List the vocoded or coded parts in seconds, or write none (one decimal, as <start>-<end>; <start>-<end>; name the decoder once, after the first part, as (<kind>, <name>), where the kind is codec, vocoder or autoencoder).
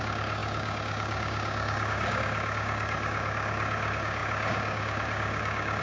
0.0-5.8 (codec, DAC)